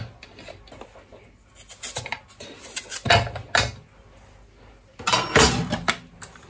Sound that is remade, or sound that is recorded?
recorded